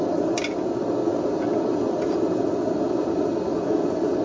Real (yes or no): yes